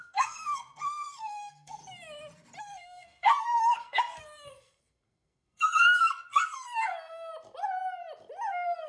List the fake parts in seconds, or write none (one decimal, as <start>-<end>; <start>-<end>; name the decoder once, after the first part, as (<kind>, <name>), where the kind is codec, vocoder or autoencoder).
0.0-1.8 (codec, SNAC); 2.6-7.3; 8.5-8.9